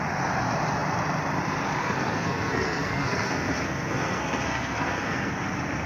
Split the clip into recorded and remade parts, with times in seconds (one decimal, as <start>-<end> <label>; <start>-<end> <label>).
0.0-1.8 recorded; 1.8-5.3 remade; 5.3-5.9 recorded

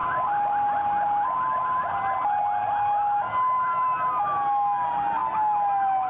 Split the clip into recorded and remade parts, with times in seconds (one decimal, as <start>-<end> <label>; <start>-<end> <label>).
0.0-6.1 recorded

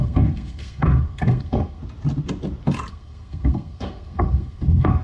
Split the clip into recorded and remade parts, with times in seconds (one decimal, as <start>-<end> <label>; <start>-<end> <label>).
0.0-1.8 remade; 1.8-2.9 recorded; 2.9-5.0 remade

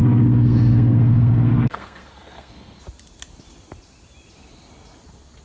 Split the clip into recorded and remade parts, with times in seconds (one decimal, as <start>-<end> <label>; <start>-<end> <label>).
0.0-2.8 remade; 2.8-5.4 recorded

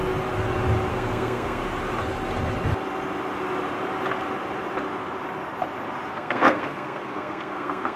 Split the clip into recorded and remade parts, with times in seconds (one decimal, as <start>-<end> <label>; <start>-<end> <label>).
0.0-0.9 recorded; 0.9-1.6 remade; 1.6-6.1 recorded; 6.1-8.0 remade

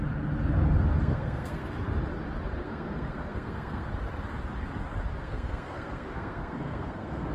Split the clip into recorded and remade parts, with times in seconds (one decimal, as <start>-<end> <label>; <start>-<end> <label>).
0.0-1.0 recorded; 1.0-1.7 remade; 1.7-2.6 recorded; 2.6-3.9 remade; 3.9-5.2 recorded; 5.2-7.3 remade